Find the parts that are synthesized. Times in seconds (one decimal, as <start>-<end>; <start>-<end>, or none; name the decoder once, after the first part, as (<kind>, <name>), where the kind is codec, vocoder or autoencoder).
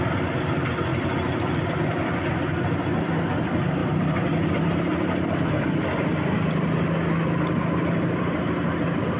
none